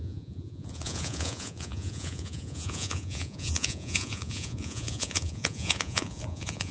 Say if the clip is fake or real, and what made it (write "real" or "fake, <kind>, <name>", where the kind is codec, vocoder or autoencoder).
fake, vocoder, Vocos